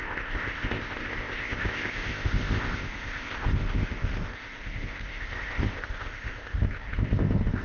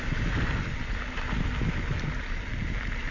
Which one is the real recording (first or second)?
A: second